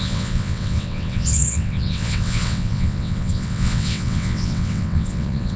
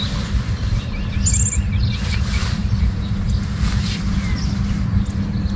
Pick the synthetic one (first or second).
first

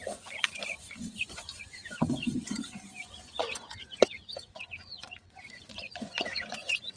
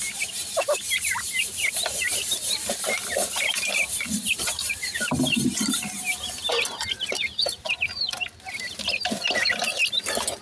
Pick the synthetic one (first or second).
first